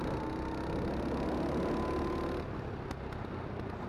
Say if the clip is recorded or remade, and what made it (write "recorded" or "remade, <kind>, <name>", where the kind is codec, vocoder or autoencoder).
recorded